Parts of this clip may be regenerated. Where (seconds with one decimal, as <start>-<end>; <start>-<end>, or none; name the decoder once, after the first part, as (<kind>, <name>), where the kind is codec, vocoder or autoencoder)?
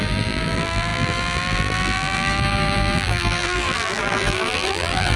0.0-5.2 (vocoder, BigVGAN v2)